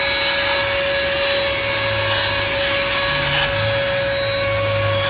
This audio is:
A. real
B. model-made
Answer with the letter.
A